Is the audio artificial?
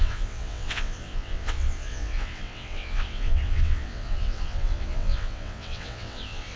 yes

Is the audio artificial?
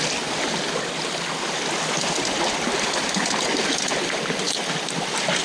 no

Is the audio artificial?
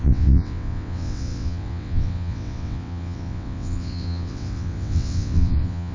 yes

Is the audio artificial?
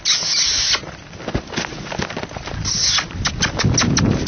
no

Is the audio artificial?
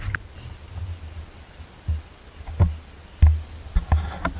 no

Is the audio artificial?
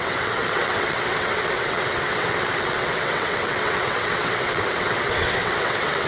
yes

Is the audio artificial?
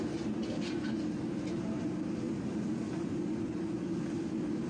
no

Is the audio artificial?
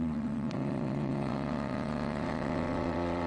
yes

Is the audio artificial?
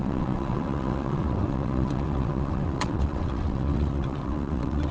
yes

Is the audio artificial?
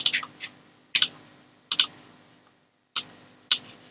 no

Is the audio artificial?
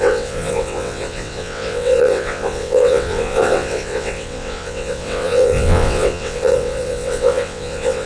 yes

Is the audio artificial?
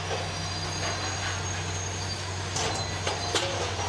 no